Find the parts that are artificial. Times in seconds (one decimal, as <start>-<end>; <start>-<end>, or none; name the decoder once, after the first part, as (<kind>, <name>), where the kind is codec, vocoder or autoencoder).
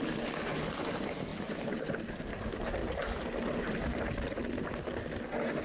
none